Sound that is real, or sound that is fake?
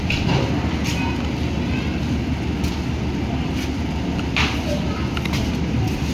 real